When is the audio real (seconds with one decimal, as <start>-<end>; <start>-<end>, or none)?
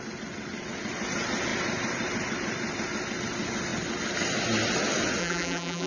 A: 0.0-5.2